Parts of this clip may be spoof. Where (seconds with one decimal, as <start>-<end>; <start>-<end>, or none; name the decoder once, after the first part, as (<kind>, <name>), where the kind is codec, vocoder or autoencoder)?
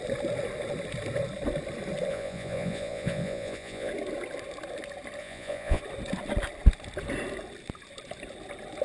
2.1-3.9 (vocoder, Vocos); 5.2-5.8